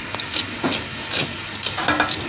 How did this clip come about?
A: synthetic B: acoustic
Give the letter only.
B